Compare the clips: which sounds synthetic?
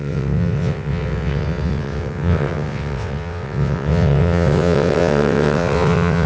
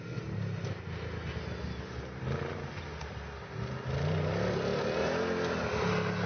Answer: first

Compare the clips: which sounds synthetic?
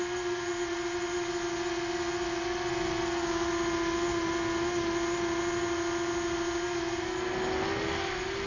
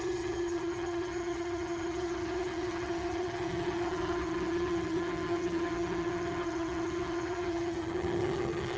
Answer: second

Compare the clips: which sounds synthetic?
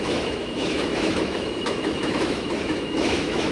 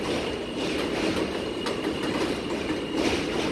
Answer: first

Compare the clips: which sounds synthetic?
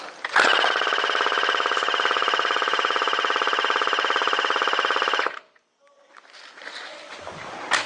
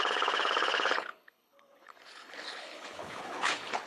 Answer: second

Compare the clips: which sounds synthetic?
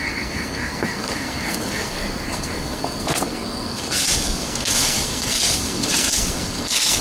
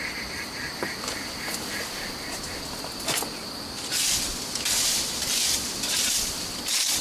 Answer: first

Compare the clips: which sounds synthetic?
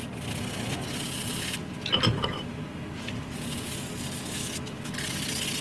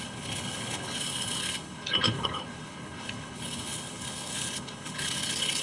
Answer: second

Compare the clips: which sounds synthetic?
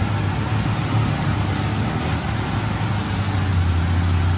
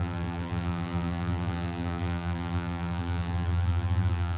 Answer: second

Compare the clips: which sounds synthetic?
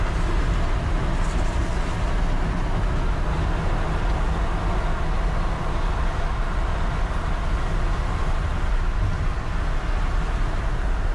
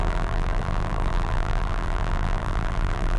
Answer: second